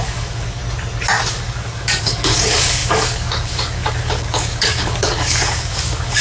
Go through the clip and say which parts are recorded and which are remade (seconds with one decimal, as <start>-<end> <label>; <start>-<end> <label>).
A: 0.0-0.6 remade; 0.6-1.3 recorded; 1.3-6.2 remade